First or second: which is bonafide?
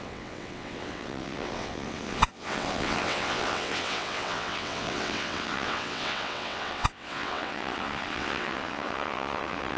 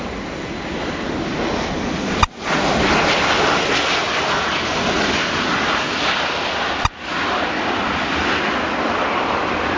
second